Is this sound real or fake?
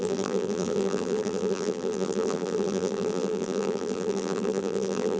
fake